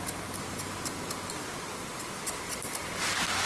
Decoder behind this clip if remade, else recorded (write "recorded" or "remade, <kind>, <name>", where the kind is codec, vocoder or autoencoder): recorded